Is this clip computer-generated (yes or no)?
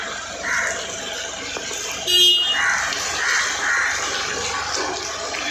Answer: no